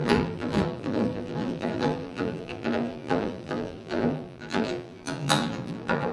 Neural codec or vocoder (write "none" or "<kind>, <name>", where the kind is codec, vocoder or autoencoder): vocoder, BigVGAN v2